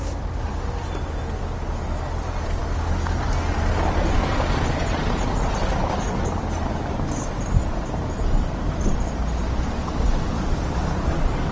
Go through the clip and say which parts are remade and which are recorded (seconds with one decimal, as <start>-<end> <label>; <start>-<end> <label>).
0.0-11.5 recorded